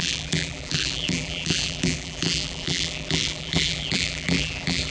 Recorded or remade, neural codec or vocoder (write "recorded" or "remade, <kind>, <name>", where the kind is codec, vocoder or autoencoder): remade, vocoder, BigVGAN v2